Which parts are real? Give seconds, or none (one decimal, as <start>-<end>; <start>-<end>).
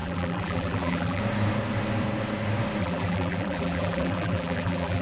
1.2-2.8